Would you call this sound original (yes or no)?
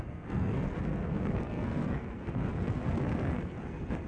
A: no